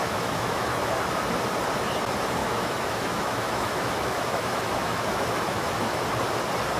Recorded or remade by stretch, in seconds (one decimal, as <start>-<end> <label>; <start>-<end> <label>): 0.0-0.9 remade; 0.9-2.4 recorded; 2.4-6.0 remade; 6.0-6.8 recorded